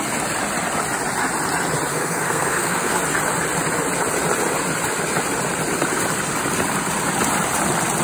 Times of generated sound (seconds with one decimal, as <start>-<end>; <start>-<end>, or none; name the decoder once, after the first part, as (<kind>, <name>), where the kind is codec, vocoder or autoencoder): 1.9-3.0 (codec, SNAC)